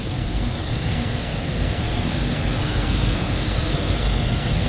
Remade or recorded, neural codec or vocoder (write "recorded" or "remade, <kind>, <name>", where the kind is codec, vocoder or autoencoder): remade, codec, SNAC